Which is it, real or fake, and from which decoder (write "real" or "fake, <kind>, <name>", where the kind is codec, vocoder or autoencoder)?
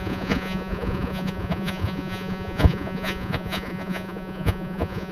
fake, vocoder, Vocos